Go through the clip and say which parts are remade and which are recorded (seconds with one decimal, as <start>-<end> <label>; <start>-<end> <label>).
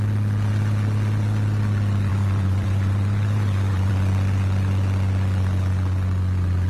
0.0-2.1 recorded; 2.1-3.9 remade; 3.9-6.7 recorded